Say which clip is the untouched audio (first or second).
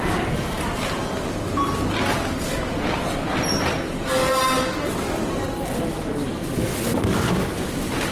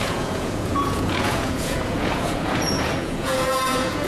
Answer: first